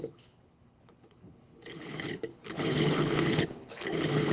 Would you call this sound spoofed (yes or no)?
yes